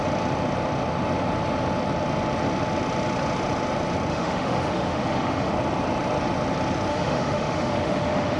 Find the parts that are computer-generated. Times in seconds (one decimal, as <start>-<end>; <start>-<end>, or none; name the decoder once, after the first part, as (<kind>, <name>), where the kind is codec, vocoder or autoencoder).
4.1-5.5 (autoencoder, DAC-VAE); 6.9-8.4